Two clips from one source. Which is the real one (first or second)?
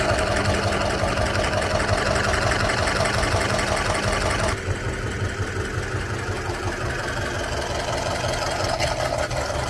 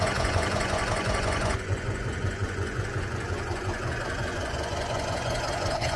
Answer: first